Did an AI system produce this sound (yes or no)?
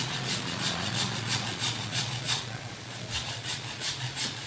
yes